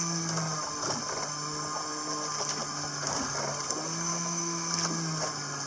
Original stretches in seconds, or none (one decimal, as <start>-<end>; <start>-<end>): 0.0-4.1; 4.7-5.7